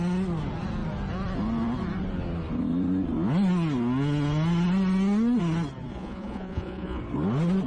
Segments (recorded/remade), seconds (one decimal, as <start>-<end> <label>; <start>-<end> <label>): 0.0-5.9 recorded; 5.9-7.0 remade; 7.0-7.7 recorded